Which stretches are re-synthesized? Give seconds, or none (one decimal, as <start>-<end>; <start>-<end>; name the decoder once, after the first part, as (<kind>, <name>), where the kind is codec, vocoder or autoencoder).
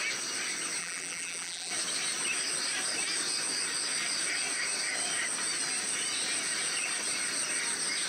0.8-1.7 (vocoder, BigVGAN v2)